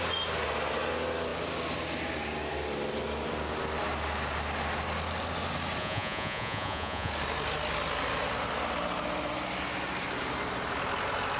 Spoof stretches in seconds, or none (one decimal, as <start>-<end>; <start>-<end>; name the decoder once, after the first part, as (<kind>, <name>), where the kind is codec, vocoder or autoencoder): 5.8-7.1 (vocoder, Vocos)